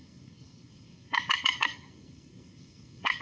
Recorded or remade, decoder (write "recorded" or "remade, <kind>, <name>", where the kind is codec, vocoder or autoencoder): remade, codec, SNAC